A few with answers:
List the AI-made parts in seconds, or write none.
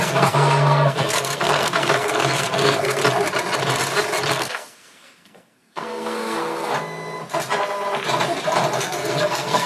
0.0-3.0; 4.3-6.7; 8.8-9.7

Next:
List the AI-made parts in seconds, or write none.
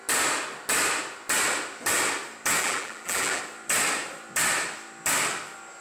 2.6-3.4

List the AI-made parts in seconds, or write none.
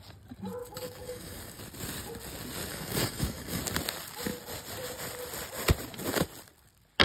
0.6-1.6; 2.7-3.6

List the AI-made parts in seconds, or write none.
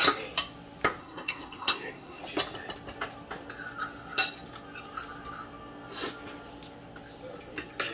1.0-2.2